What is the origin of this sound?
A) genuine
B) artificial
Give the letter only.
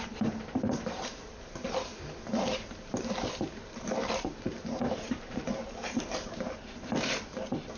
B